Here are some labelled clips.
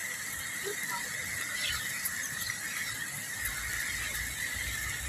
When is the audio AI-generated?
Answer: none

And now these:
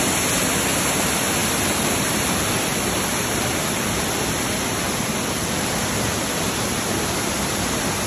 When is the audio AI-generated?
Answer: 1.4-5.8 (vocoder, BigVGAN v2)

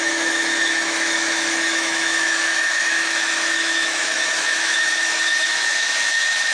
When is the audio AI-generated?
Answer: 0.0-6.5 (autoencoder, DAC-VAE)

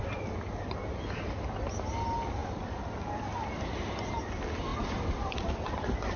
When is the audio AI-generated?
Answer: none

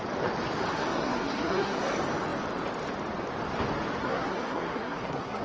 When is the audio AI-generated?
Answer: 0.7-1.9 (codec, SNAC); 4.0-5.4